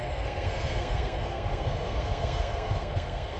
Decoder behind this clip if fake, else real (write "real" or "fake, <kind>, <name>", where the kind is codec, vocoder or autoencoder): fake, codec, SNAC